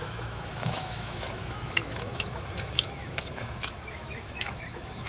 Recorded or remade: remade